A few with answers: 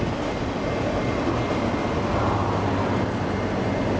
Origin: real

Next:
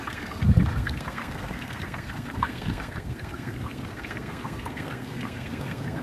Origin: fake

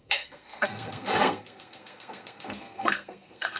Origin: fake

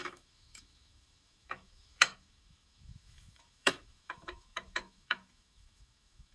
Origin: fake